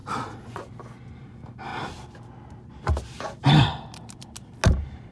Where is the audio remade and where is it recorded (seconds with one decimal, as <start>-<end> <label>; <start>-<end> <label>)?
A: 0.0-0.6 remade; 0.6-5.1 recorded